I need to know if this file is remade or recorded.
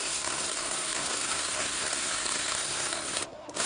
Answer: remade